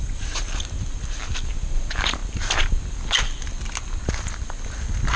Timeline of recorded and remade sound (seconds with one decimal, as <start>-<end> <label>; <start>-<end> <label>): 0.0-0.5 remade; 0.5-5.2 recorded